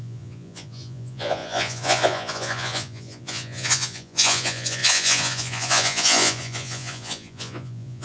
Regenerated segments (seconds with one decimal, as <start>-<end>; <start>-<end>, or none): 0.0-8.0